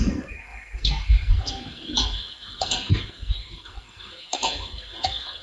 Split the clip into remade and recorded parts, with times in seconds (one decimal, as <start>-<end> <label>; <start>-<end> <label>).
0.0-5.4 remade